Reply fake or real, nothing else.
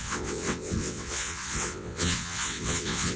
fake